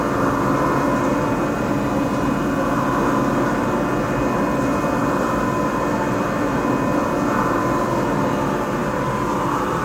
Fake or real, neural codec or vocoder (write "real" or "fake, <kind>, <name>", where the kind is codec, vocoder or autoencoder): real